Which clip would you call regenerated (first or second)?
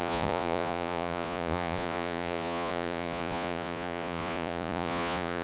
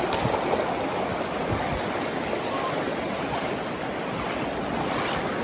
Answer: first